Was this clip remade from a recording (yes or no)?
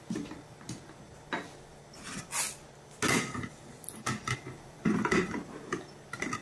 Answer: no